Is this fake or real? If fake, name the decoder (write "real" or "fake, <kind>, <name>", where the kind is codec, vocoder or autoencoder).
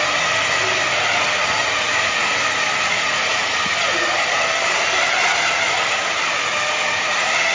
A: real